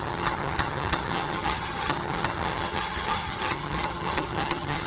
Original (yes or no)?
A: no